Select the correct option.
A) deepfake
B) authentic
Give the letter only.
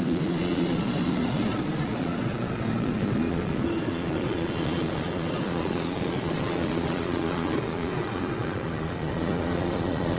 A